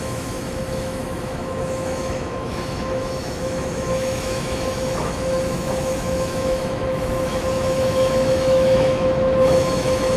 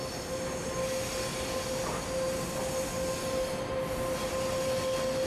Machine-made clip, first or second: first